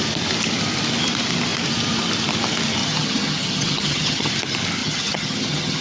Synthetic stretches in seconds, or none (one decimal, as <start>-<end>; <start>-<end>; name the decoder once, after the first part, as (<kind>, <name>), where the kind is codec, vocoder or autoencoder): 2.8-4.3 (vocoder, HiFi-GAN); 4.8-5.8